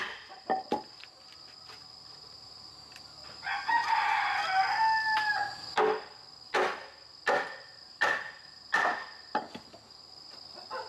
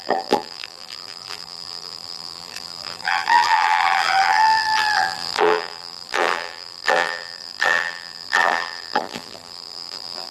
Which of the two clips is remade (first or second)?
second